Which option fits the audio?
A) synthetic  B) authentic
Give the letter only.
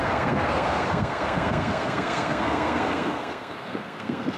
A